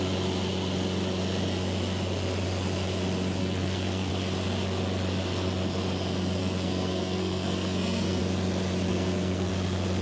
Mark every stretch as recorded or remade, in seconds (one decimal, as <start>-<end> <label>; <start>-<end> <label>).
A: 0.0-3.4 recorded; 3.4-4.1 remade; 4.1-6.4 recorded; 6.4-8.2 remade; 8.2-8.9 recorded; 8.9-9.5 remade; 9.5-10.0 recorded